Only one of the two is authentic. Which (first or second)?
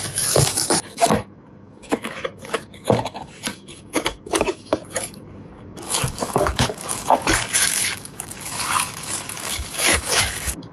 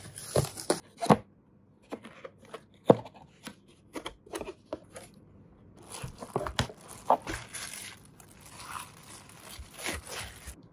second